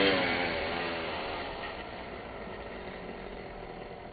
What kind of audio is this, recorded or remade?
remade